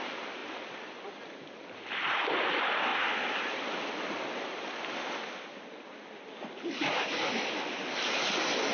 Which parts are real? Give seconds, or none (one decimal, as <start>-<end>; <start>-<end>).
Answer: 0.0-8.7